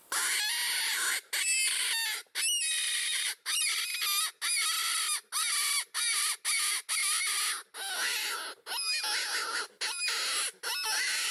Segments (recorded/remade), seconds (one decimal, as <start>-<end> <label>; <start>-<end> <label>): 0.0-11.3 recorded